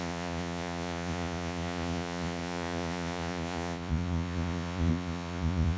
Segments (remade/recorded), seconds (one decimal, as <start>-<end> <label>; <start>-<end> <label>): 0.0-5.8 remade